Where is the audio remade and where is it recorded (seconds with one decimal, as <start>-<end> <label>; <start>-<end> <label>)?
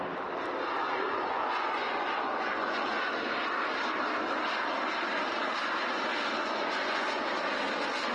0.0-0.8 recorded; 0.8-3.1 remade; 3.1-6.4 recorded; 6.4-7.3 remade; 7.3-8.1 recorded